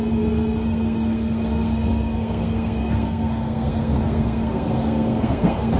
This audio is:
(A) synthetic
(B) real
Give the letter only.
A